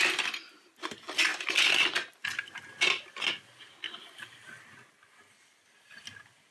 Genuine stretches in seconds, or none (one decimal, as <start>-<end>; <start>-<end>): 0.0-6.5